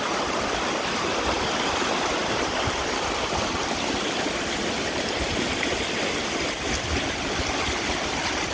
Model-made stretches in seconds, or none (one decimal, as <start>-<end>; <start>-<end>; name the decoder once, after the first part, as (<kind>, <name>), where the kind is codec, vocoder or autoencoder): none